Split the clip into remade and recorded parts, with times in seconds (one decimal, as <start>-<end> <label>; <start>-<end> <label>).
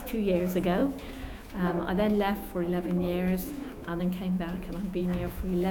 0.0-5.7 remade